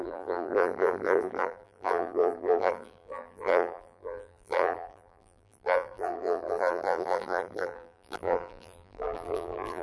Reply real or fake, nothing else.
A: fake